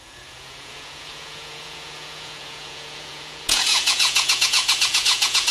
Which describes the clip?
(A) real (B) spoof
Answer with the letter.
B